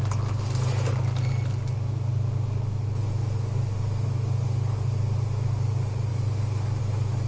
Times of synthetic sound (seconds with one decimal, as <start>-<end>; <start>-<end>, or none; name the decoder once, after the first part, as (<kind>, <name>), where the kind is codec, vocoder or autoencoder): none